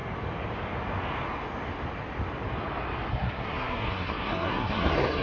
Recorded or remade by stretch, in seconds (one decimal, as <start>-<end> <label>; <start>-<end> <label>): 0.0-3.1 recorded; 3.1-5.2 remade